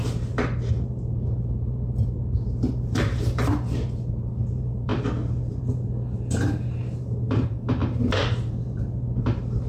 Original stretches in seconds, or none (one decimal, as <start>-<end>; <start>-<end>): 4.9-5.5